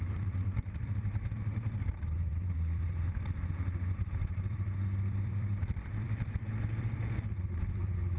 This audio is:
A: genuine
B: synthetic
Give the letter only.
B